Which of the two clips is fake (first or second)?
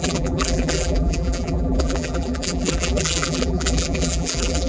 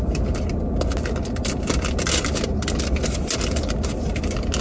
first